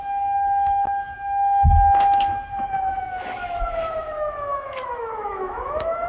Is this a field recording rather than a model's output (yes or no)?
no